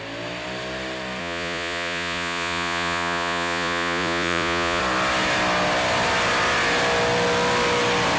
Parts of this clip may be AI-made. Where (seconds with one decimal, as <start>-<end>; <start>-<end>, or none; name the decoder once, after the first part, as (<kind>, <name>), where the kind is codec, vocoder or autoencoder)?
1.2-4.8 (vocoder, Vocos)